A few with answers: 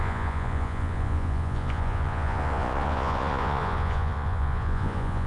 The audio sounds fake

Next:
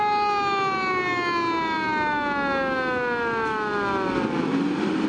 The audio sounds real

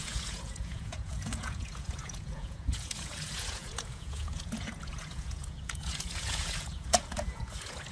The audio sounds fake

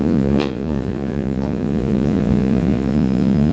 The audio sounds fake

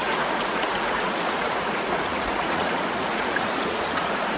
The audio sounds fake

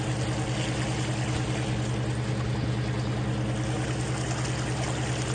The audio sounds real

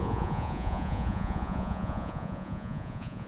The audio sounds fake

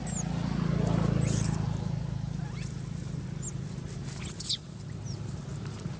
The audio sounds real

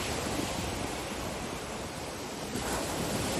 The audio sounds real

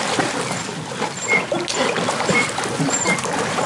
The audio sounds real